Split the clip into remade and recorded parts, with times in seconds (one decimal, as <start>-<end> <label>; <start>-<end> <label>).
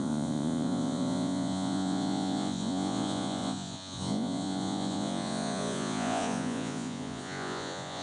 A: 0.0-8.0 remade